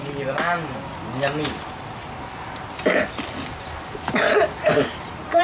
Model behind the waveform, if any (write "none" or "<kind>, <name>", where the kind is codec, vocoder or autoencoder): none